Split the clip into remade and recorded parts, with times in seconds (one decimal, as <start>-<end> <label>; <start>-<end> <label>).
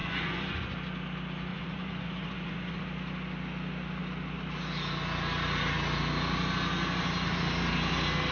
0.0-0.7 remade; 0.7-1.5 recorded; 1.5-2.8 remade; 2.8-8.3 recorded